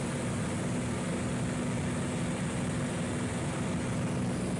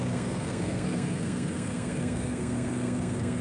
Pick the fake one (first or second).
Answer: second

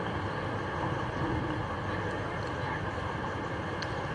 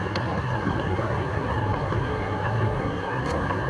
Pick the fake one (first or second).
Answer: second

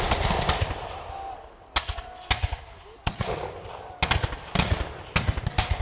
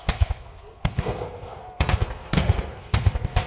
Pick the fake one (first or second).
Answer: second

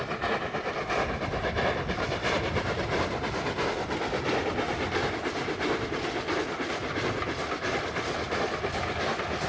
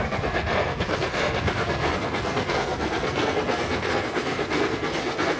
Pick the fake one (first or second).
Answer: second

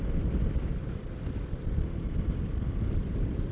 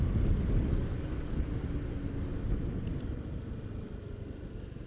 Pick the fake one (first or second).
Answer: first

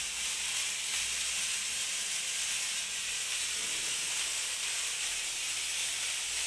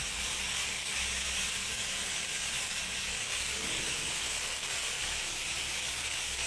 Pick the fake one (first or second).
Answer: second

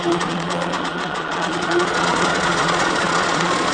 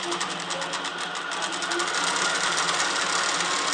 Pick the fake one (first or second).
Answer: first